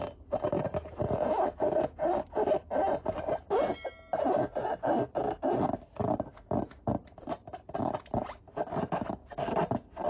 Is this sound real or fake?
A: real